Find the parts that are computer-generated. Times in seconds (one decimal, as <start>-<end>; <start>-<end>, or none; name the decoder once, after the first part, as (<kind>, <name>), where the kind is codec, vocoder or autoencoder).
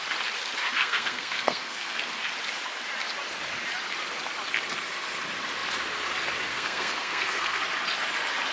0.7-2.0 (codec, SNAC); 6.5-7.6